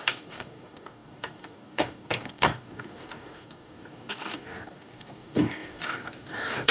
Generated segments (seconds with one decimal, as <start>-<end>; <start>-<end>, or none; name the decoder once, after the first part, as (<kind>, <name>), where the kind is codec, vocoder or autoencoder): 0.0-6.7 (codec, DAC)